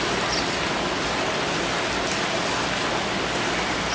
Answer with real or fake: real